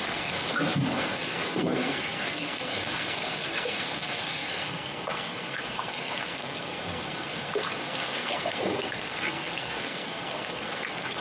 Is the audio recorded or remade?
remade